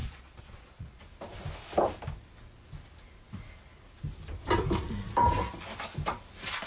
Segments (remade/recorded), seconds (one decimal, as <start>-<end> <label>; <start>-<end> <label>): 0.0-1.0 remade; 1.0-6.7 recorded